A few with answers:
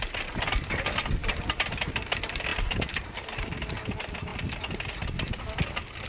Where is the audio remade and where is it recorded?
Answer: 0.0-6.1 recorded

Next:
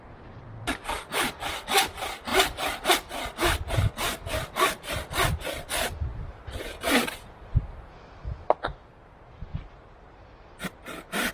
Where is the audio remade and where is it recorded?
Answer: 0.0-6.1 recorded; 6.1-8.0 remade; 8.0-9.5 recorded; 9.5-11.3 remade